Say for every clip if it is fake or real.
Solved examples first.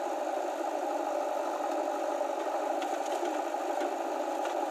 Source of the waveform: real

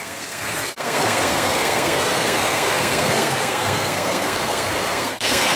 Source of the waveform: fake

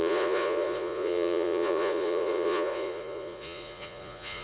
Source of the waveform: fake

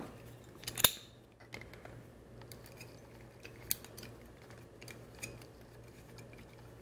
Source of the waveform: real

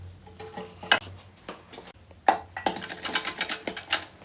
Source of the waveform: real